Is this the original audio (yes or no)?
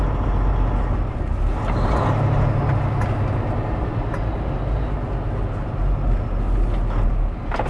yes